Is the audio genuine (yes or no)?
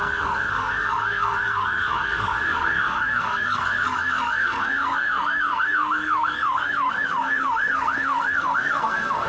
no